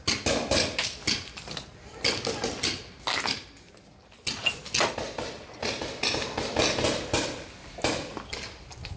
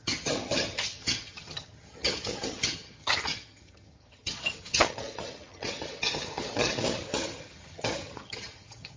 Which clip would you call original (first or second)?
first